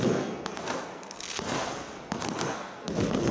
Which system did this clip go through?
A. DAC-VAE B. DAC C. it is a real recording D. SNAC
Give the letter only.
D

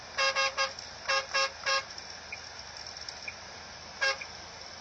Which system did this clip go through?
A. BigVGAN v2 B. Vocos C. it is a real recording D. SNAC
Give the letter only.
C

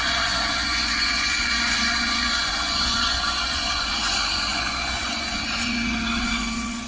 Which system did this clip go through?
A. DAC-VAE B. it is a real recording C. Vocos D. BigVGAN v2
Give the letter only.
C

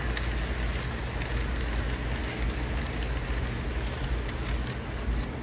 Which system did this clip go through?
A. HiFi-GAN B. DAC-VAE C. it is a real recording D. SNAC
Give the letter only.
C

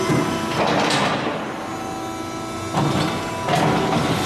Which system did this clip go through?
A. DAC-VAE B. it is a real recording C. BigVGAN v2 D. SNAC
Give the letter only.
B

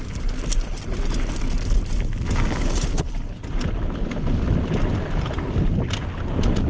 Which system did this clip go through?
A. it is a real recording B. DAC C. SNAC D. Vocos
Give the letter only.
A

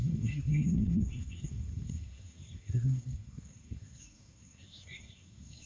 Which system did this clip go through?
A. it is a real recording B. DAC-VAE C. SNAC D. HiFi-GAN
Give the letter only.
C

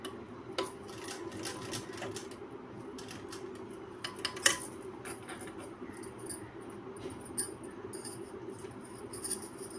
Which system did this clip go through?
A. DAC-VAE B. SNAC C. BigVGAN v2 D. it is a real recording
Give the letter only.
D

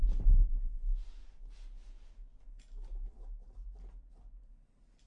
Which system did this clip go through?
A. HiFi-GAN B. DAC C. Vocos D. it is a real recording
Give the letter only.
D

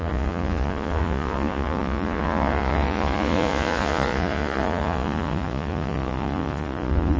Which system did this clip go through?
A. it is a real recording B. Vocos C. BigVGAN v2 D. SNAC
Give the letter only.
B